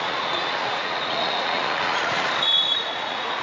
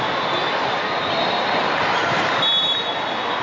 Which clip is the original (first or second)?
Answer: second